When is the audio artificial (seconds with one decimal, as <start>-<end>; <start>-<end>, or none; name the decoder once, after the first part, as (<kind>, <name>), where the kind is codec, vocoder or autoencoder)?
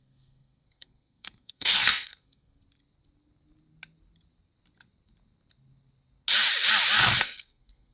0.0-2.6 (codec, SNAC); 7.2-7.9